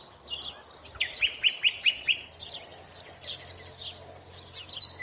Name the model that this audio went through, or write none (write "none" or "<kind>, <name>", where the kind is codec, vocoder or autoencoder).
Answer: none